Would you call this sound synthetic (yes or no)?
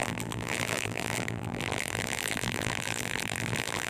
yes